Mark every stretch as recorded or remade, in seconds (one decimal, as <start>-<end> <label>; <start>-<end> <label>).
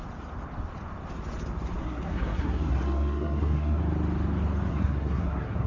0.0-1.8 recorded; 1.8-3.8 remade; 3.8-4.7 recorded; 4.7-5.7 remade